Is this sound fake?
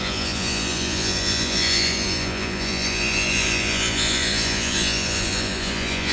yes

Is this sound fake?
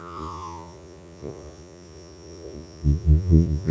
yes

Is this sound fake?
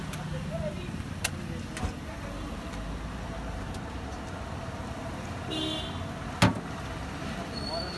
no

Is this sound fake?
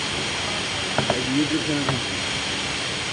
no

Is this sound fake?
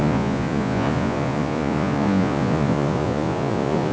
yes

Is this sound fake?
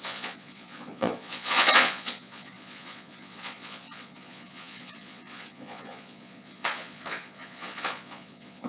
yes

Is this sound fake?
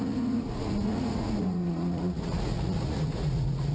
yes